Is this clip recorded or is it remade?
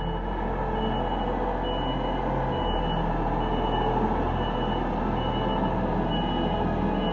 recorded